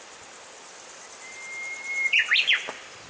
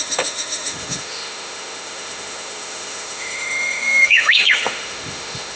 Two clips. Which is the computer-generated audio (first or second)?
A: second